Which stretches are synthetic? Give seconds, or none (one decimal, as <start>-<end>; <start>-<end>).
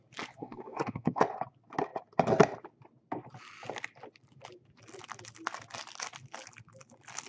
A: 0.4-1.2